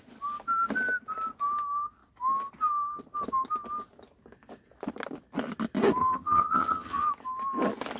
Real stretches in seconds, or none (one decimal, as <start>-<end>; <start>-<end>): 0.0-6.0; 7.1-8.0